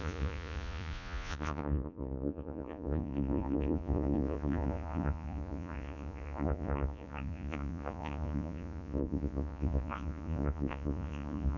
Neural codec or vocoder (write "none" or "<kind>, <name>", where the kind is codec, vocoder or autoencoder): vocoder, Vocos